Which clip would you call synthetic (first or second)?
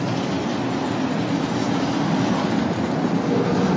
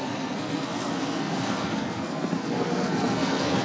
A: second